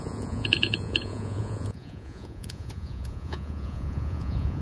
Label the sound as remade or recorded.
remade